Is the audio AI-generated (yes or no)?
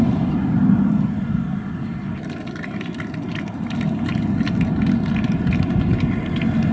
no